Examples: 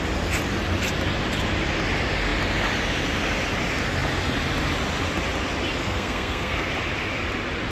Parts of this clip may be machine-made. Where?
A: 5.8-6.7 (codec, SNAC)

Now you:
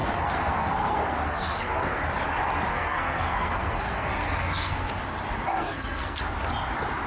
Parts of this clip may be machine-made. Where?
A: 0.0-2.0 (codec, SNAC); 2.7-4.9; 5.5-6.2

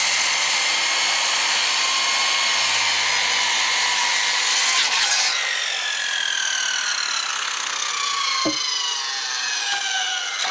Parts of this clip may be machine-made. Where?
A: 7.3-7.9 (codec, SNAC)

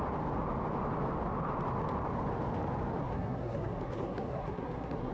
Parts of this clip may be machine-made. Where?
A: 3.0-5.1 (codec, SNAC)

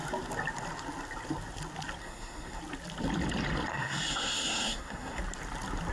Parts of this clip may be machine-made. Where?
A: 2.0-2.6 (codec, SNAC); 3.7-5.2

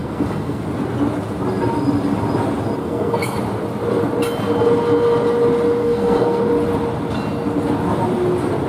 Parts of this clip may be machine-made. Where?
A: 0.0-0.6 (codec, SNAC); 2.8-3.4; 5.8-6.4